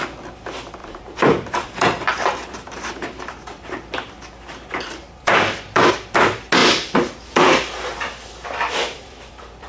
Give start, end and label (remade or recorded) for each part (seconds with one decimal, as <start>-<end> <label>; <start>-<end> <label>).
0.0-0.8 recorded; 0.8-5.9 remade; 5.9-6.6 recorded; 6.6-9.7 remade